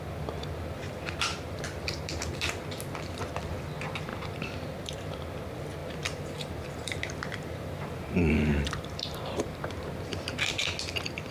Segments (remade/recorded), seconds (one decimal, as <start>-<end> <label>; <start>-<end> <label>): 0.0-1.3 recorded; 1.3-3.2 remade; 3.2-5.8 recorded; 5.8-10.4 remade; 10.4-11.3 recorded